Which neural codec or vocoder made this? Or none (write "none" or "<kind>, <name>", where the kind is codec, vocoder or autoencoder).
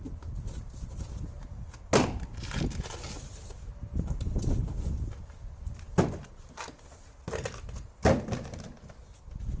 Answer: none